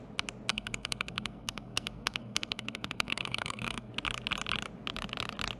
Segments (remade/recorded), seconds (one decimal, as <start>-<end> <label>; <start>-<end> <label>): 0.0-0.5 recorded; 0.5-3.9 remade; 3.9-5.6 recorded

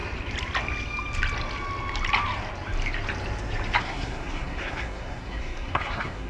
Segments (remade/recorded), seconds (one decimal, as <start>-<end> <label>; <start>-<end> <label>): 0.0-3.8 recorded; 3.8-6.3 remade

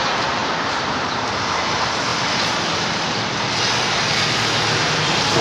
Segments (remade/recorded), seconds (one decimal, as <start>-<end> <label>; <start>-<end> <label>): 0.0-5.4 recorded

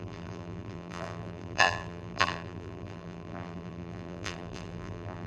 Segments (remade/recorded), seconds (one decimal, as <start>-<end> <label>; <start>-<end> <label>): 0.0-5.3 remade

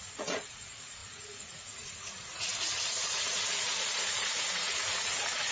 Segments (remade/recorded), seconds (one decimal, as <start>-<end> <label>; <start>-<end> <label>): 0.0-5.5 remade

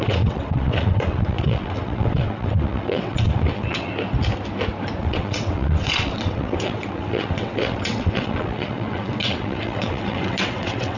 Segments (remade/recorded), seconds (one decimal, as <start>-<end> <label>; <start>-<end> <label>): 0.0-3.9 remade; 3.9-5.0 recorded; 5.0-11.0 remade

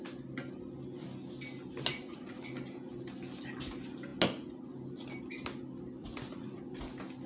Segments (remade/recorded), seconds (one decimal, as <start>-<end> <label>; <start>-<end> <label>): 0.0-1.9 recorded; 1.9-2.4 remade; 2.4-6.0 recorded; 6.0-6.6 remade; 6.6-7.3 recorded